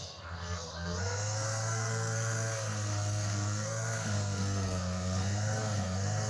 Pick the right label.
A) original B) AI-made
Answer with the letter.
B